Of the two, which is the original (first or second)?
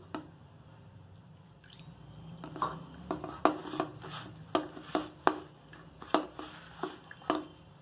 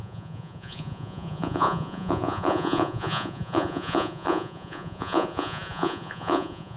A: first